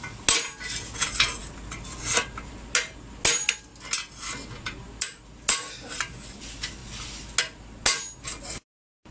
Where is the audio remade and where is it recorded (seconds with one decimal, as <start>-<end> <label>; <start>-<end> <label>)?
0.0-9.1 recorded